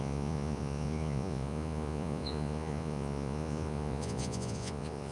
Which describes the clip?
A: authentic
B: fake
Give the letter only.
B